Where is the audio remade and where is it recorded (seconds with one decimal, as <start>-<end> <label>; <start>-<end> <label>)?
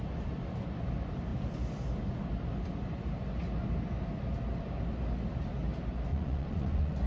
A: 0.0-6.1 recorded; 6.1-7.1 remade